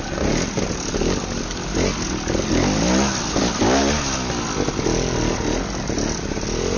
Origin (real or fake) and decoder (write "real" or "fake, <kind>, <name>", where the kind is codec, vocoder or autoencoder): real